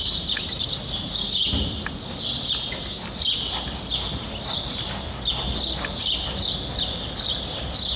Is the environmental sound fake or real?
real